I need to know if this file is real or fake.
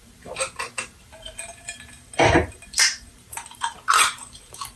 fake